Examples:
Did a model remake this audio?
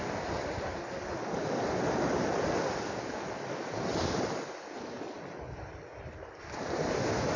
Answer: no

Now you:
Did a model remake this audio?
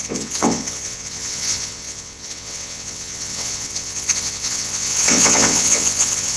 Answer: yes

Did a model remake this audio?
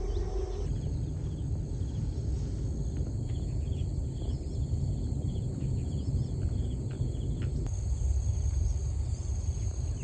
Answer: no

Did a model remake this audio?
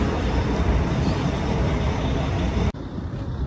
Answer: no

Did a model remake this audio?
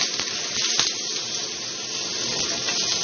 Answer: no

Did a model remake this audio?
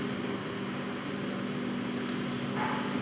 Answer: no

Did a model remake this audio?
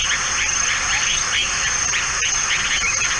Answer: no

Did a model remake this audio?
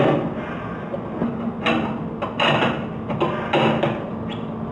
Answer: no